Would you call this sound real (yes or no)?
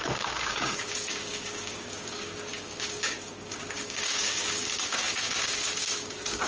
no